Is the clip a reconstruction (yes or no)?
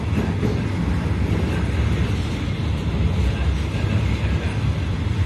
no